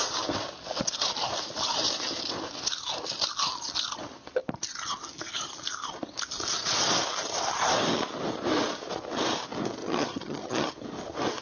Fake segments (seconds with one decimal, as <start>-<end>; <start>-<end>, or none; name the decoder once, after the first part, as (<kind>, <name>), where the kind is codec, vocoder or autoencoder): 9.8-10.7 (vocoder, HiFi-GAN)